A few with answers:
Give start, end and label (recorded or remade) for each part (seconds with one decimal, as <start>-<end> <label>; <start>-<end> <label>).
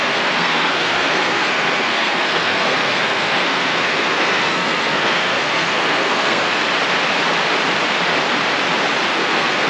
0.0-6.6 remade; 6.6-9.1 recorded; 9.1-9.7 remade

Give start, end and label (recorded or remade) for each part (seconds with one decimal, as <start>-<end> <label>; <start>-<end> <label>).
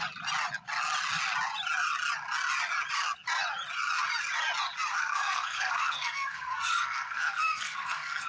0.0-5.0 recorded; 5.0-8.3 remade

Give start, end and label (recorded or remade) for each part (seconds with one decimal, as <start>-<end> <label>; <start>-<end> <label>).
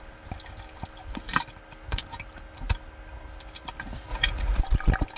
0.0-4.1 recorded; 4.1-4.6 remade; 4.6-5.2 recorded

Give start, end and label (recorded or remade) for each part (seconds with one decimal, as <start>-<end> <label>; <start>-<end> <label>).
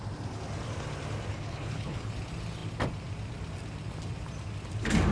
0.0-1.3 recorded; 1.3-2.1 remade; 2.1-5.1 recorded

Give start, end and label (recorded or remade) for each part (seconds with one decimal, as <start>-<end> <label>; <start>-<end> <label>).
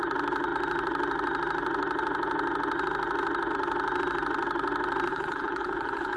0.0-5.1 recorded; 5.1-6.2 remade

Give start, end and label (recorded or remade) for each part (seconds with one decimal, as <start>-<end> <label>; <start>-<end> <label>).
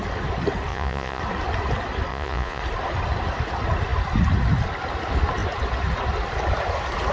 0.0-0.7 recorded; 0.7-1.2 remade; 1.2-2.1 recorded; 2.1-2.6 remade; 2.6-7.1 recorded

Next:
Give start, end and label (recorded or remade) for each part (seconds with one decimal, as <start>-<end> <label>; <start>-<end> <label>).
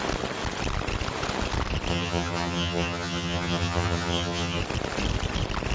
0.0-1.9 recorded; 1.9-4.6 remade; 4.6-5.7 recorded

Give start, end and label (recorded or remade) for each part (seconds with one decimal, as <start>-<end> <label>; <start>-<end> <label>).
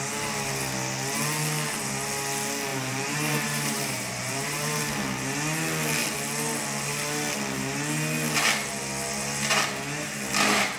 0.0-2.7 recorded; 2.7-4.8 remade; 4.8-10.8 recorded